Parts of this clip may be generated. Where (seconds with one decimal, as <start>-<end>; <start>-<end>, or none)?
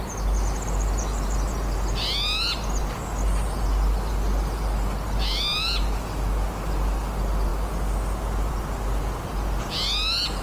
none